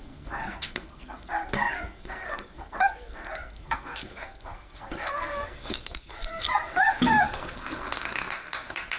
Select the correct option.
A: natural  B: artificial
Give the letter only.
B